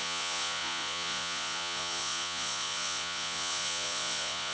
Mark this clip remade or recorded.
remade